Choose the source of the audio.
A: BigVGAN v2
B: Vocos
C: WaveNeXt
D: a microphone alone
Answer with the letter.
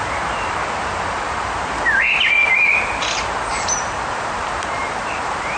A